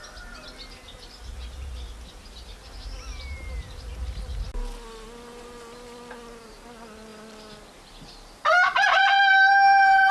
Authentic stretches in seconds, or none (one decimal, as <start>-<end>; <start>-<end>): 0.0-10.1

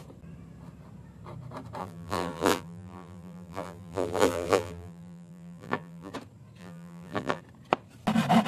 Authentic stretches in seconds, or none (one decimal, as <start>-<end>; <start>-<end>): 0.0-1.8; 6.1-6.6; 7.4-8.5

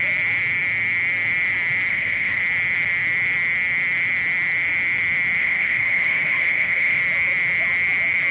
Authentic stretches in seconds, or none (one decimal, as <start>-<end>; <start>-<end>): 0.0-1.9; 2.4-5.4; 7.0-8.3

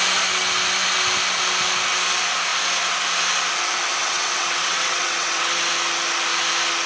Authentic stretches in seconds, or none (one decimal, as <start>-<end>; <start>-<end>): 0.0-4.0; 5.5-6.9